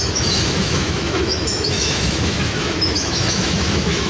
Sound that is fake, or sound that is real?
fake